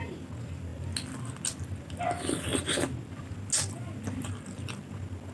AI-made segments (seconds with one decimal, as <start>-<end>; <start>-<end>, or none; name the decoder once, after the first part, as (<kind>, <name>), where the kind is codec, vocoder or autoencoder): none